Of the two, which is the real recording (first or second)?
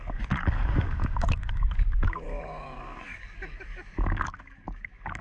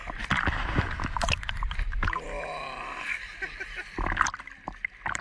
second